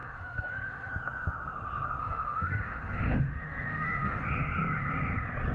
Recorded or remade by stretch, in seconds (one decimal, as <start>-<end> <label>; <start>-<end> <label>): 0.0-0.9 remade; 0.9-2.0 recorded; 2.0-4.2 remade; 4.2-5.5 recorded